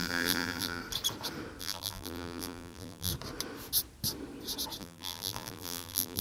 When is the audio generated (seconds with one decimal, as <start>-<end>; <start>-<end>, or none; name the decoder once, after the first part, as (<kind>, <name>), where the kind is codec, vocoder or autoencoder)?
0.0-0.8 (vocoder, BigVGAN v2); 1.6-3.1; 4.8-6.2